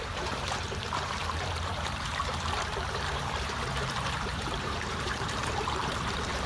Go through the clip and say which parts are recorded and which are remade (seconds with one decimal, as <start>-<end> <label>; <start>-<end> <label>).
0.0-6.5 remade